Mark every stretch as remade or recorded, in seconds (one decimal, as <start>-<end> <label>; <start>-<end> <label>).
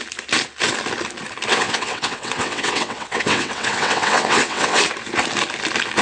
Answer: 0.0-1.5 recorded; 1.5-4.8 remade; 4.8-6.0 recorded